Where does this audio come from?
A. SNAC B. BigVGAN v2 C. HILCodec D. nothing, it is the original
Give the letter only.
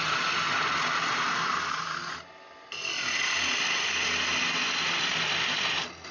D